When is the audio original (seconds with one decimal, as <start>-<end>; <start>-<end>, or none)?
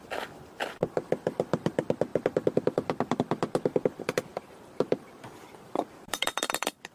0.0-4.3; 6.2-6.9